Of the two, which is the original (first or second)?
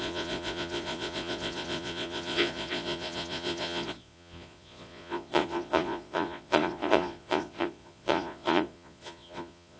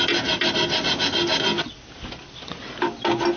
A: second